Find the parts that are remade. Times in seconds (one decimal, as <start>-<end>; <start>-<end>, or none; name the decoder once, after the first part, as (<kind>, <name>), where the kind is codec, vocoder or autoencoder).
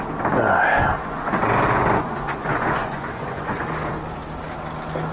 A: 1.0-3.7 (vocoder, Vocos)